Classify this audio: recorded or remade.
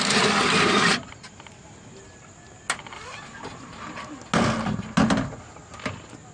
recorded